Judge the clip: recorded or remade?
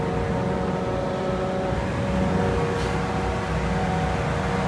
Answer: recorded